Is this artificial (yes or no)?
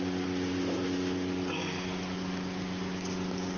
no